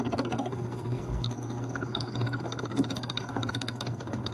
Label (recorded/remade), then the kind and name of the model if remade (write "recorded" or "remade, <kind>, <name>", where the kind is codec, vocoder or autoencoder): remade, codec, SNAC